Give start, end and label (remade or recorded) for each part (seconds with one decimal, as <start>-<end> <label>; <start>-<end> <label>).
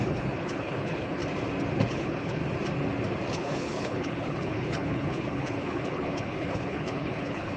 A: 0.0-1.2 remade; 1.2-1.9 recorded; 1.9-2.4 remade; 2.4-3.3 recorded; 3.3-7.6 remade